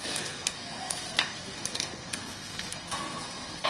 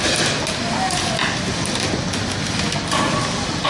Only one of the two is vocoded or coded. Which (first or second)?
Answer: first